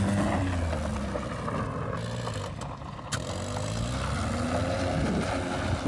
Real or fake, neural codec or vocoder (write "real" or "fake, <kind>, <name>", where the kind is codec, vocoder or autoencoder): real